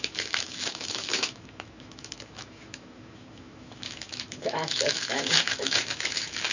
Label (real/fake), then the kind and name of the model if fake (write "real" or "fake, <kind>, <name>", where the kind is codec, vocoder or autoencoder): fake, autoencoder, DAC-VAE